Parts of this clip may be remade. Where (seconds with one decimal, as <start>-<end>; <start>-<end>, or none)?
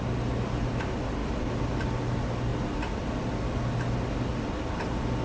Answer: none